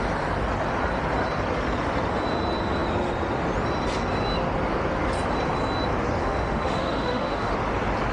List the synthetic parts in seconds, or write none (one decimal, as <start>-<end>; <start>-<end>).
6.2-7.5